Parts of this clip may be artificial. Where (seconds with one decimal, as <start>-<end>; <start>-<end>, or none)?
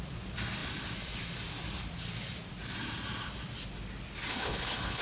4.3-5.0